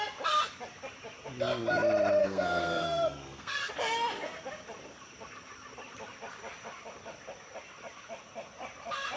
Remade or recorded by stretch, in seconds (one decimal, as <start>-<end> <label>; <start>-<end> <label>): 0.0-2.2 recorded; 2.2-3.7 remade; 3.7-9.2 recorded